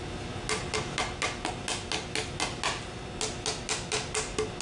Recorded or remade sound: recorded